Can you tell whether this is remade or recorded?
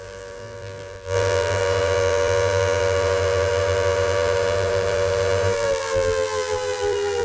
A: remade